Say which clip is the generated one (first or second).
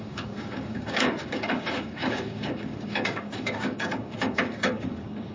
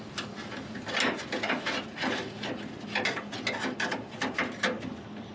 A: first